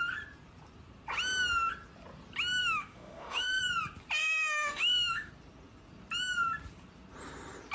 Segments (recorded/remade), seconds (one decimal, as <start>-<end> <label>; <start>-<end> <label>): 0.0-2.6 recorded; 2.6-3.6 remade; 3.6-4.2 recorded; 4.2-5.3 remade; 5.3-7.7 recorded